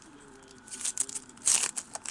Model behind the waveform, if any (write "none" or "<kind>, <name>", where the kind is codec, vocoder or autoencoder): none